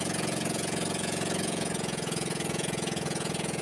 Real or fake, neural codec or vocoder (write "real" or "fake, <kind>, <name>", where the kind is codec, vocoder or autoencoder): fake, vocoder, Vocos